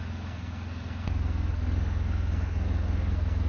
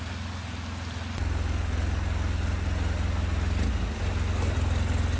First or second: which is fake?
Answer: first